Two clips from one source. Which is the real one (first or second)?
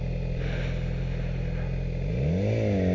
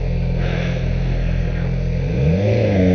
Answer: first